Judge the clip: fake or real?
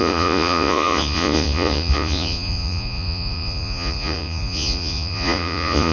fake